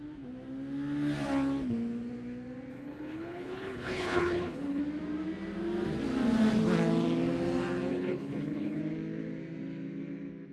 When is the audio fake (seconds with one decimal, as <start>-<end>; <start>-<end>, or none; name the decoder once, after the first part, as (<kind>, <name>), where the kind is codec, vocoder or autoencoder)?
2.7-4.8 (codec, HILCodec); 7.9-8.8